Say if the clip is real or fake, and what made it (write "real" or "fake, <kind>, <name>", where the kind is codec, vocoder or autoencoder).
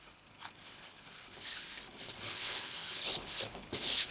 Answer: fake, codec, HILCodec